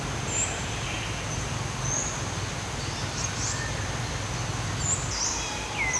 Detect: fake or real real